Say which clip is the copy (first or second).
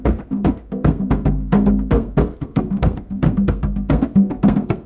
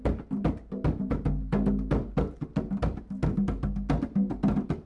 first